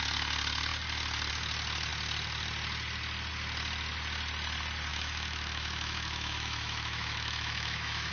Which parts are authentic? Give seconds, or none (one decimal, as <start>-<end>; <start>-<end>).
0.0-4.9